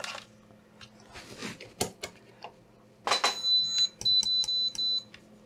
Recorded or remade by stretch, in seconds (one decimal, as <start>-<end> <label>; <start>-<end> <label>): 0.0-5.5 recorded